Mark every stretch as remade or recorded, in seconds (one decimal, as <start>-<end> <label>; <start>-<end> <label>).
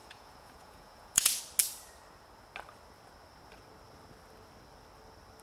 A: 0.0-1.4 remade; 1.4-5.4 recorded